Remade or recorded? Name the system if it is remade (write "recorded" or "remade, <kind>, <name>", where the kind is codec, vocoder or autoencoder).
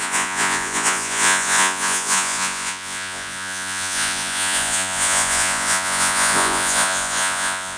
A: remade, vocoder, Vocos